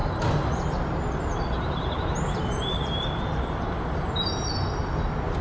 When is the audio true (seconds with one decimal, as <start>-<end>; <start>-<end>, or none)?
0.0-5.4